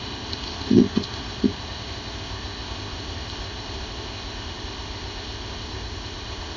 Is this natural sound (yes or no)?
no